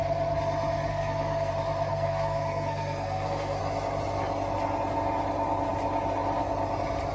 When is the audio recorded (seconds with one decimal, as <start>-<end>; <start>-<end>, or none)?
0.0-0.9; 1.5-1.9; 3.6-7.1